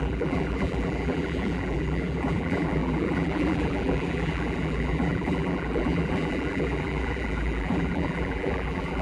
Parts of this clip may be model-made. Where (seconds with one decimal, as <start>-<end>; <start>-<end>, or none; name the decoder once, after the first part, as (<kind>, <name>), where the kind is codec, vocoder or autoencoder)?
0.0-9.0 (vocoder, BigVGAN v2)